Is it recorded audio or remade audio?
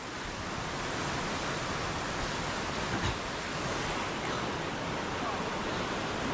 recorded